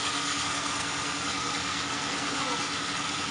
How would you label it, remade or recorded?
remade